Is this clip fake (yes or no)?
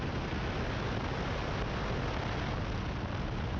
no